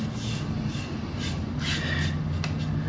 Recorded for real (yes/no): yes